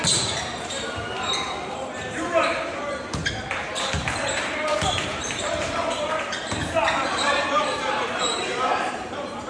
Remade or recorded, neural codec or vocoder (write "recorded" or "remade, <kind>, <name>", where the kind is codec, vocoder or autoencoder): remade, vocoder, BigVGAN v2